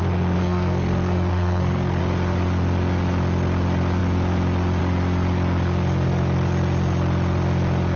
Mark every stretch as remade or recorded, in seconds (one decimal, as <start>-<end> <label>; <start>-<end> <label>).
0.0-0.4 recorded; 0.4-2.0 remade; 2.0-8.0 recorded